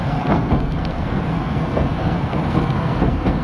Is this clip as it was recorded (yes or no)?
no